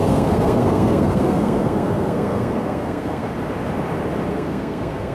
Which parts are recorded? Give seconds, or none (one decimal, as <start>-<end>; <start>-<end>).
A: 3.3-4.3